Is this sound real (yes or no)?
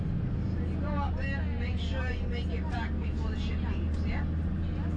yes